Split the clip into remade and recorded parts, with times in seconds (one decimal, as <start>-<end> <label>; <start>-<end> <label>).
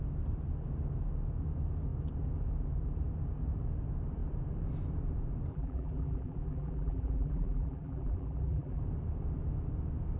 0.0-5.5 recorded; 5.5-8.8 remade; 8.8-10.2 recorded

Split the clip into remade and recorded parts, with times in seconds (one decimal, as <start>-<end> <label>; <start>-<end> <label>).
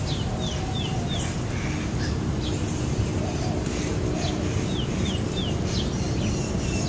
0.0-6.9 recorded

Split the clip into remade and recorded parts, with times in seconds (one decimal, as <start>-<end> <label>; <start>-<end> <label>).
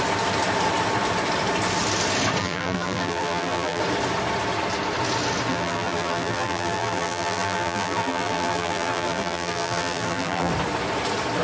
0.0-2.4 recorded; 2.4-3.8 remade; 3.8-5.5 recorded; 5.5-10.5 remade; 10.5-11.4 recorded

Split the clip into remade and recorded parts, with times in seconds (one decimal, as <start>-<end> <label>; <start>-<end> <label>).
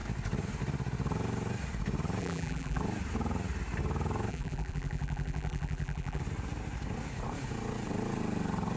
0.0-2.2 recorded; 2.2-2.8 remade; 2.8-4.3 recorded; 4.3-6.2 remade; 6.2-8.8 recorded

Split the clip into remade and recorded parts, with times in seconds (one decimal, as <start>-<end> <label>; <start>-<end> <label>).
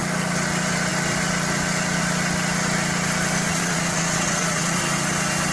0.0-3.5 recorded; 3.5-4.8 remade; 4.8-5.5 recorded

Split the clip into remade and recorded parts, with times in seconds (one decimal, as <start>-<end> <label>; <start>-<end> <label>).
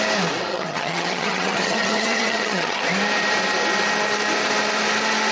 0.0-0.5 recorded; 0.5-2.8 remade; 2.8-5.3 recorded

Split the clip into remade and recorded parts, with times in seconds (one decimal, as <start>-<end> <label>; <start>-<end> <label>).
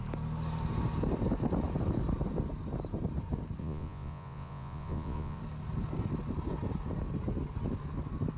0.0-3.6 recorded; 3.6-5.4 remade; 5.4-8.4 recorded